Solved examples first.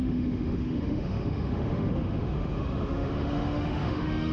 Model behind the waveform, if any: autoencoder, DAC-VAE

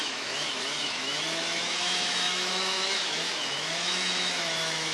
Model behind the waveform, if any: autoencoder, DAC-VAE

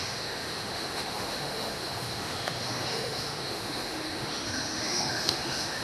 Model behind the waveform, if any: autoencoder, DAC-VAE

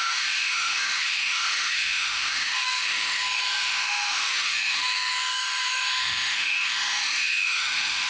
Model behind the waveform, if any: autoencoder, DAC-VAE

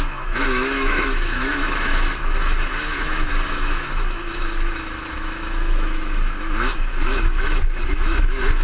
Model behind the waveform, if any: autoencoder, DAC-VAE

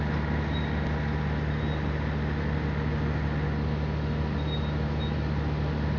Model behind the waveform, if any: none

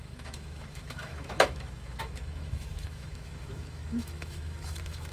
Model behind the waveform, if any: autoencoder, DAC-VAE